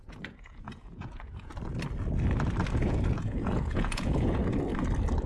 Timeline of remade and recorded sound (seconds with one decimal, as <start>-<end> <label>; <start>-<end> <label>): 0.0-1.5 remade; 1.5-2.8 recorded; 2.8-4.4 remade; 4.4-5.3 recorded